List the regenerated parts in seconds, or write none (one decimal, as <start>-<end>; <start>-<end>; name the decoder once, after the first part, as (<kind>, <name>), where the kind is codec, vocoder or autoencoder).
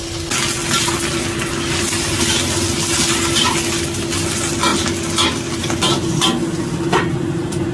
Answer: none